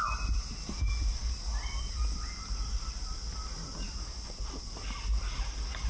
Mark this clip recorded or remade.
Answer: recorded